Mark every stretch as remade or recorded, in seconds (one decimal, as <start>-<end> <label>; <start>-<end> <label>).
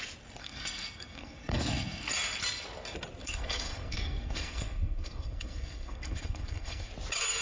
0.0-0.4 recorded; 0.4-2.1 remade; 2.1-3.2 recorded; 3.2-6.9 remade; 6.9-7.4 recorded